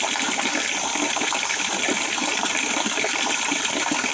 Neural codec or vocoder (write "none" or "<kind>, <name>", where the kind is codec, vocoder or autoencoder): none